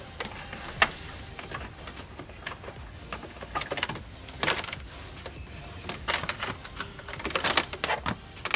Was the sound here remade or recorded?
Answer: recorded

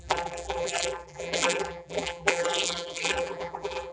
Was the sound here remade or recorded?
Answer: remade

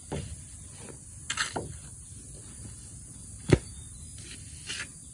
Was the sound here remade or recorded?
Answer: recorded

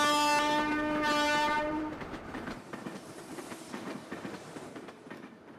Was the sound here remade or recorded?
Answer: remade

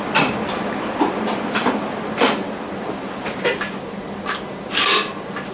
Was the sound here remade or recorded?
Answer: remade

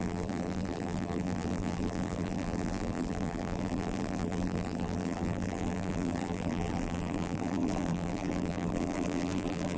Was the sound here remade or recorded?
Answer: remade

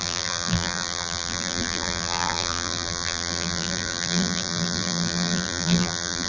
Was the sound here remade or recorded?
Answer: remade